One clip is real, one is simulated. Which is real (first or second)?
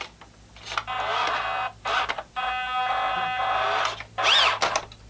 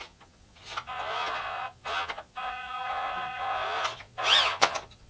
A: first